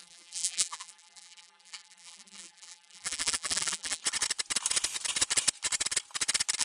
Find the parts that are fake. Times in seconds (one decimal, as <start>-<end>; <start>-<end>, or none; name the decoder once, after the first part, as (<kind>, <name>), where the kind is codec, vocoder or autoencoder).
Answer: 0.0-4.0 (vocoder, BigVGAN v2)